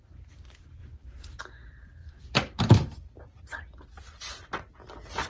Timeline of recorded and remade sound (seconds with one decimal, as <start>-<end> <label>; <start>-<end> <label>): 0.0-0.8 recorded; 0.8-1.4 remade; 1.4-2.0 recorded; 2.0-3.4 remade; 3.4-5.3 recorded